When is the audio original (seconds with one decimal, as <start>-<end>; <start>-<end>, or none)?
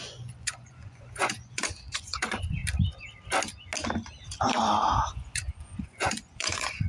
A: 2.6-5.0